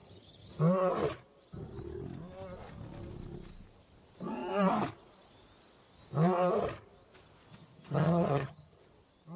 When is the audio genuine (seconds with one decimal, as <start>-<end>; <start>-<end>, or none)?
0.6-7.5; 8.8-9.4